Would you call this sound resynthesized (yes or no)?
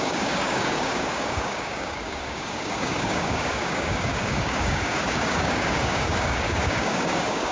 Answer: yes